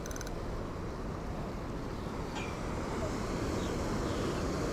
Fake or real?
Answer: real